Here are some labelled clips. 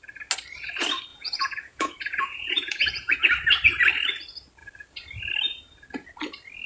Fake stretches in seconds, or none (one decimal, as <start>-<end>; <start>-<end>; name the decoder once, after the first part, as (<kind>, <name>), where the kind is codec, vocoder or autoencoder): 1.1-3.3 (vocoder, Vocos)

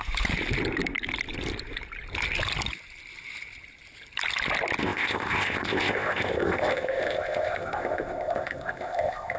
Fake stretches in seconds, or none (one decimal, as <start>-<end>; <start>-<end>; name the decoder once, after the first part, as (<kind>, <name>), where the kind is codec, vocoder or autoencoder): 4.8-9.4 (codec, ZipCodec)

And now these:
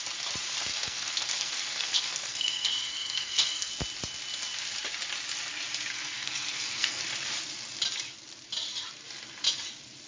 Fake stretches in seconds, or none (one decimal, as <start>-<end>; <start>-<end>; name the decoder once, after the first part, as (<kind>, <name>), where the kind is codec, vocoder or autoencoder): 0.7-3.7 (codec, SNAC); 5.9-7.0